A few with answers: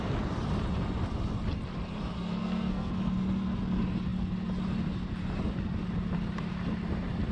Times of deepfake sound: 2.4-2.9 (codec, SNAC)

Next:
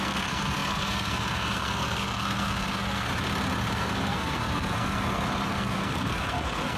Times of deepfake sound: 0.0-3.1 (codec, SNAC); 3.7-6.8

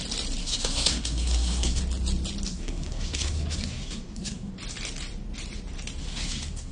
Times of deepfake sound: 0.4-1.8 (codec, SNAC); 2.5-4.5; 6.0-6.7

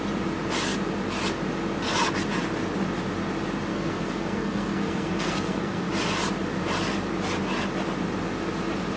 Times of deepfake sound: 3.7-5.9 (codec, SNAC)

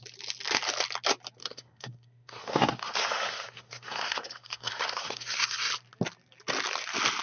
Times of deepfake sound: 1.4-5.7 (codec, SNAC)

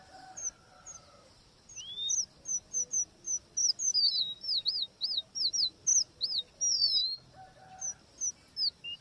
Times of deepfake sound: none

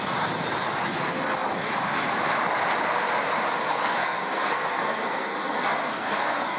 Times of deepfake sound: 3.7-6.6 (codec, SNAC)

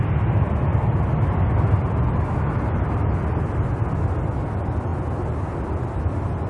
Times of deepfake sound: none